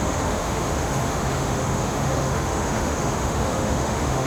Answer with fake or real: fake